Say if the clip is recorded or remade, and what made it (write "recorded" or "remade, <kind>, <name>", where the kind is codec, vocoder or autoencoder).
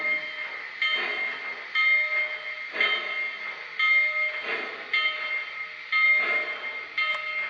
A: recorded